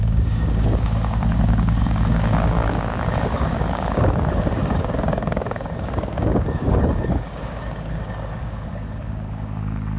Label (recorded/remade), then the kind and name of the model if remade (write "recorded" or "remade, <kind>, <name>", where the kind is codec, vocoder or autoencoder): remade, codec, DAC